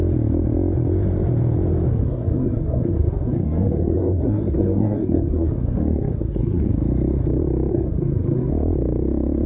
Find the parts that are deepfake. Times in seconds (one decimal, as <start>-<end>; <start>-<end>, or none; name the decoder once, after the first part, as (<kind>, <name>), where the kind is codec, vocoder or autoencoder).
1.9-6.7 (codec, SNAC); 7.7-8.5